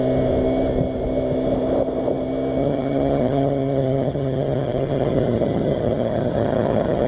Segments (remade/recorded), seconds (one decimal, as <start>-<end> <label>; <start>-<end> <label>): 0.0-2.6 recorded; 2.6-7.1 remade